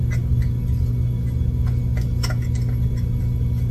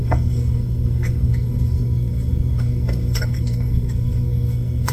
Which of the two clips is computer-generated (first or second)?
second